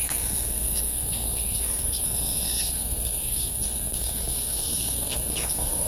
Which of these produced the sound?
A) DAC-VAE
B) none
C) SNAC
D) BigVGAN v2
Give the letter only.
C